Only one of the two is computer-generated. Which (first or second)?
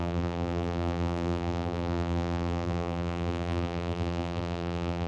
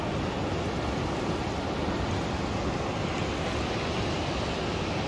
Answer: first